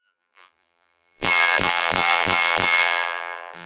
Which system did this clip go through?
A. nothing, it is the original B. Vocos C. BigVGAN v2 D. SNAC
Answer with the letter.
C